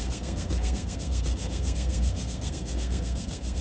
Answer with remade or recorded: remade